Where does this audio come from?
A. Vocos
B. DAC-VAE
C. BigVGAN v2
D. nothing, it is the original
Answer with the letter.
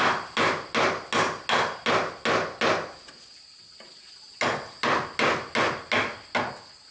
D